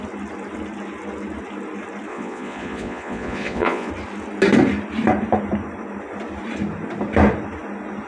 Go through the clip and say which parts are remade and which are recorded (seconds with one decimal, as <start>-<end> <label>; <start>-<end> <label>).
0.0-2.1 recorded; 2.1-3.9 remade; 3.9-8.1 recorded